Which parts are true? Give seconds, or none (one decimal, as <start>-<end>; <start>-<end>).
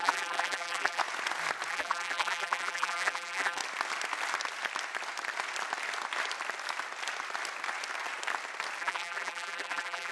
1.0-1.7; 3.6-8.8